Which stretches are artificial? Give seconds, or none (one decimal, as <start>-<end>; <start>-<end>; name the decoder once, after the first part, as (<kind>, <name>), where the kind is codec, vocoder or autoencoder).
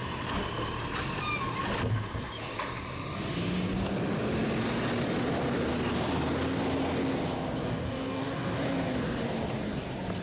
7.6-8.6 (codec, DAC)